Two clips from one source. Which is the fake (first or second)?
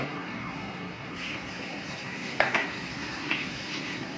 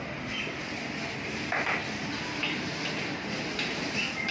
first